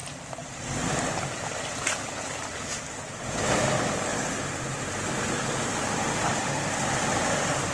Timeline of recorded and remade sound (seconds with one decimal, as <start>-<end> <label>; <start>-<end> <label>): 0.0-4.1 remade; 4.1-5.7 recorded; 5.7-7.7 remade